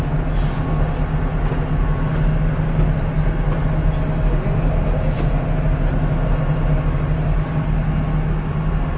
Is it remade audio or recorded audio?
recorded